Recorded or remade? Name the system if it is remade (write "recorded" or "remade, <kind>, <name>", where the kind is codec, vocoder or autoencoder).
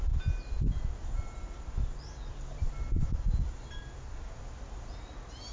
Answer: recorded